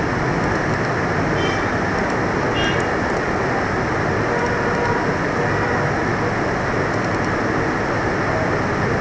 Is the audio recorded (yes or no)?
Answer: yes